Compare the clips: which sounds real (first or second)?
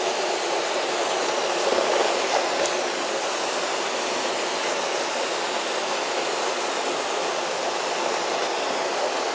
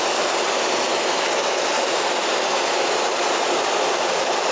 first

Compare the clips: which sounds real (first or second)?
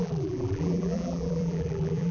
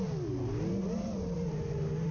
second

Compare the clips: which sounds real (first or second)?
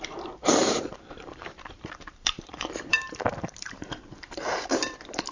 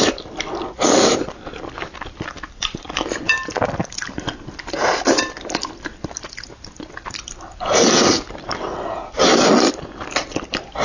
second